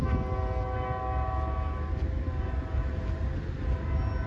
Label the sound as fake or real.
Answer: real